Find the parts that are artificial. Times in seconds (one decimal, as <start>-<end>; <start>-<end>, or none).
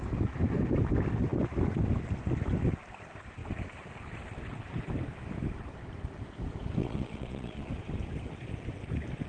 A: 6.8-7.7